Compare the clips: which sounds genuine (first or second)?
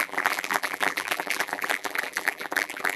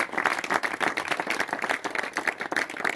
second